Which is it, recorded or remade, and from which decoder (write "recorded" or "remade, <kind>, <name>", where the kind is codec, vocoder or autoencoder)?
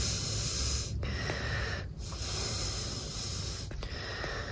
recorded